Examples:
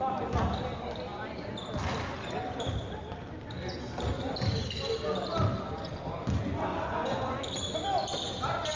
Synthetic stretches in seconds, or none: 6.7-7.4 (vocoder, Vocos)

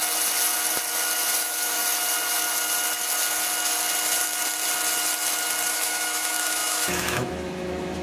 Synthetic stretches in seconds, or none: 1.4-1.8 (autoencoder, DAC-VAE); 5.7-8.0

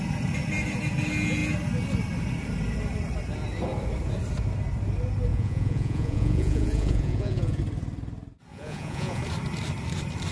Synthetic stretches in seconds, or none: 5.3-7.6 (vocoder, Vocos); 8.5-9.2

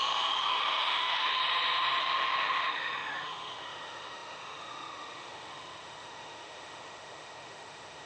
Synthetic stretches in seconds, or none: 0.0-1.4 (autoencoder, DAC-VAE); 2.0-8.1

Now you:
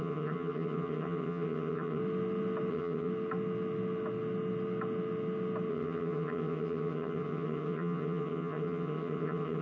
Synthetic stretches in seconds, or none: 0.0-2.0 (vocoder, HiFi-GAN); 2.7-3.1; 5.7-9.6

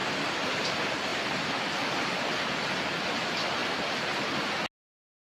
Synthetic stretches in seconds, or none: 0.0-0.7 (vocoder, BigVGAN v2)